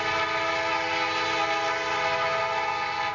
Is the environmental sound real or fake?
real